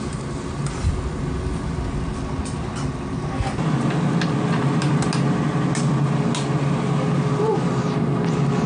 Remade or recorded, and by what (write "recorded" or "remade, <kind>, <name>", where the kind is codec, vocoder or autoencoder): recorded